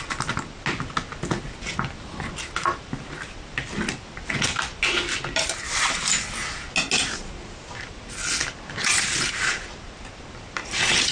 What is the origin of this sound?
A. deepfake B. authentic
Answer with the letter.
B